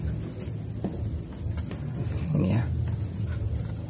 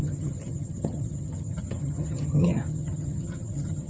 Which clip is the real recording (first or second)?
first